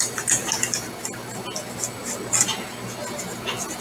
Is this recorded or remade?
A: recorded